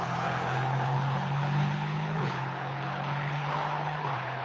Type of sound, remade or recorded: remade